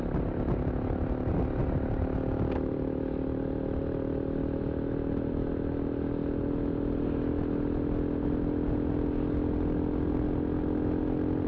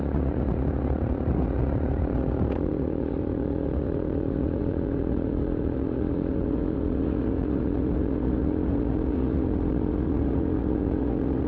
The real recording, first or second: first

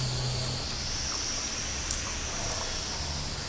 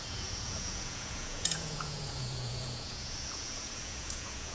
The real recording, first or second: first